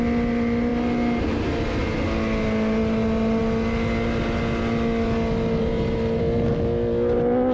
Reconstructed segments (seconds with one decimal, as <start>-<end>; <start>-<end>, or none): none